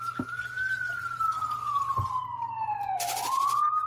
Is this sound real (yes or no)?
yes